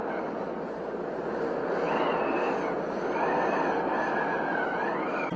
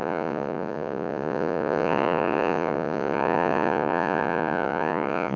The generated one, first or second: second